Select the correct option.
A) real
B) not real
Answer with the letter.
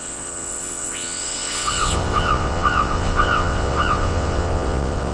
B